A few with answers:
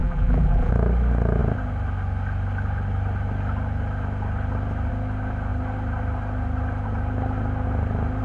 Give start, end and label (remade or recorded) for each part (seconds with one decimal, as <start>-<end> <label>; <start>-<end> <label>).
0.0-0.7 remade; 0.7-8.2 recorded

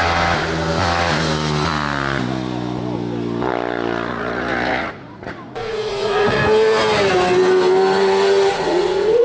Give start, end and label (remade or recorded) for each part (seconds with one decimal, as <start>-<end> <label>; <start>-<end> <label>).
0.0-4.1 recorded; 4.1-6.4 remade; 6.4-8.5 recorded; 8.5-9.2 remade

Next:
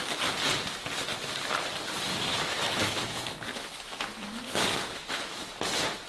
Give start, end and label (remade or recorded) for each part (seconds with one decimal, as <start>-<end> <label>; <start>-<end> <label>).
0.0-2.3 recorded; 2.3-5.4 remade; 5.4-6.1 recorded

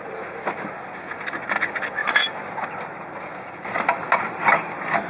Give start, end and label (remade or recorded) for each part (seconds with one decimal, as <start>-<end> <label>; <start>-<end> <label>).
0.0-5.1 recorded